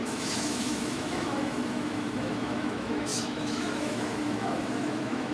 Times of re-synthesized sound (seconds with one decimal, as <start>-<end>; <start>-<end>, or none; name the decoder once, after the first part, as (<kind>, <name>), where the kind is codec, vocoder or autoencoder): 0.0-5.3 (autoencoder, DAC-VAE)